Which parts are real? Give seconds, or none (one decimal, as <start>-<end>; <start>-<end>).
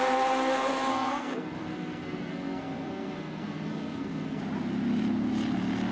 0.0-0.9; 4.4-5.9